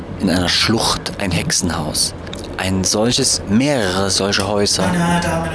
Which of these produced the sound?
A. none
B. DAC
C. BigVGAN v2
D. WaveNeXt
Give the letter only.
A